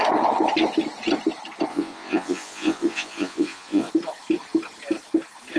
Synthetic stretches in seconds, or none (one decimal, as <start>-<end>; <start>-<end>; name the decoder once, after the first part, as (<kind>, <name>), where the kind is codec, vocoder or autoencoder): 1.7-3.9 (vocoder, Vocos)